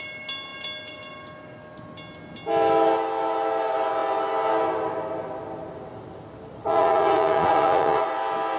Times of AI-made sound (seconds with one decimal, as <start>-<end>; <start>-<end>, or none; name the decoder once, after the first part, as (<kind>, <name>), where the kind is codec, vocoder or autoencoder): 6.6-8.1 (vocoder, Vocos)